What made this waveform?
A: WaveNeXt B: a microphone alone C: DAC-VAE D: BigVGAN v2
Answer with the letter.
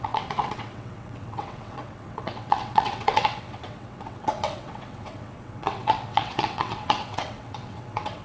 A